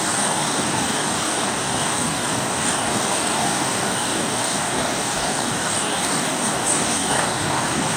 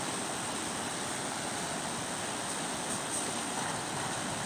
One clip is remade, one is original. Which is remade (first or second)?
first